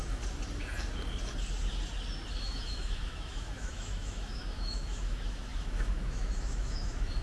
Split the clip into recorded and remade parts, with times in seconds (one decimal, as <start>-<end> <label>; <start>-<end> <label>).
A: 0.0-2.3 recorded; 2.3-7.2 remade